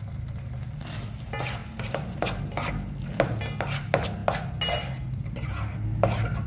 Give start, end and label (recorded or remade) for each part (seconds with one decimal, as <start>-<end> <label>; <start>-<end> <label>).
0.0-6.5 recorded